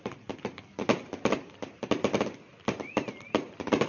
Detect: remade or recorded recorded